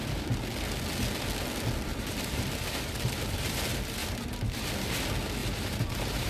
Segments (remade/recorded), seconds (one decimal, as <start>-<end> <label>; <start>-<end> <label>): 0.0-1.9 recorded; 1.9-3.6 remade; 3.6-4.0 recorded; 4.0-4.7 remade; 4.7-5.4 recorded; 5.4-6.3 remade